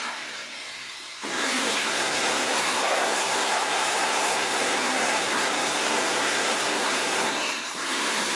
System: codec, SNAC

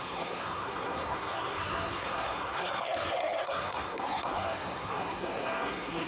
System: codec, SNAC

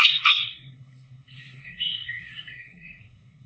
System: codec, SNAC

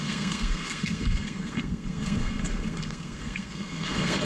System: codec, SNAC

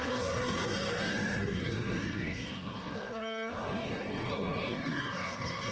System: codec, SNAC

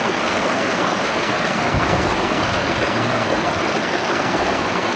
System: codec, SNAC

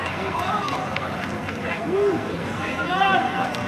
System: codec, SNAC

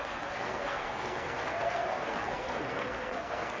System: codec, SNAC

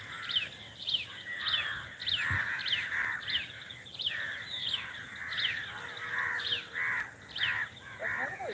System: none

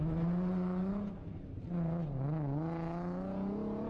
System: none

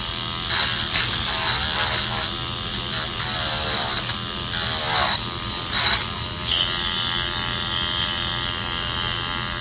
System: none